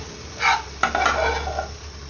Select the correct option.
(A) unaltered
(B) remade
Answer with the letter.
A